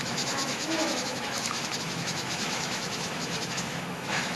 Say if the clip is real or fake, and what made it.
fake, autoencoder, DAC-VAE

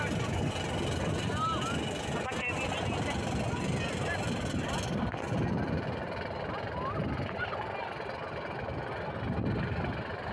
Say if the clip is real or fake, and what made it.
real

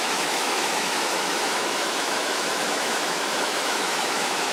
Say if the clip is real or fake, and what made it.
fake, autoencoder, DAC-VAE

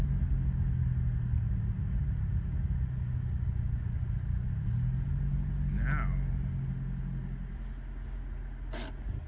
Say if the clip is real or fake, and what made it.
real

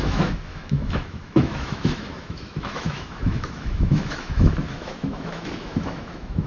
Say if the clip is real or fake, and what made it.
fake, autoencoder, DAC-VAE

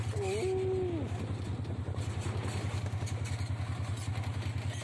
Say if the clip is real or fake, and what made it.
real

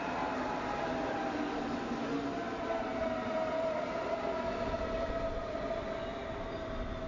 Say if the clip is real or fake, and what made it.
real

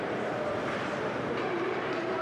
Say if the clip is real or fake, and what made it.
real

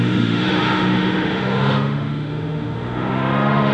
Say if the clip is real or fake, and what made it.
fake, autoencoder, DAC-VAE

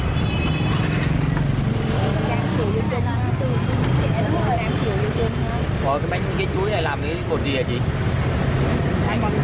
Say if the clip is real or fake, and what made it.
real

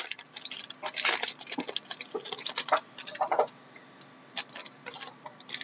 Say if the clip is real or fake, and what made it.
real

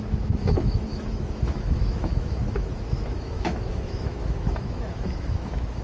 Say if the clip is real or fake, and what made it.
fake, autoencoder, DAC-VAE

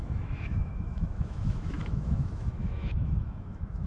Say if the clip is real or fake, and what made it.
fake, autoencoder, DAC-VAE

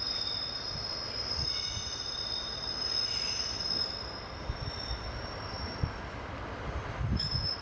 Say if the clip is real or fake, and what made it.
real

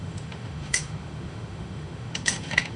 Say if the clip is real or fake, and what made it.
fake, autoencoder, DAC-VAE